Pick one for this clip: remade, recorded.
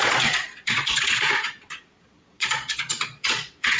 remade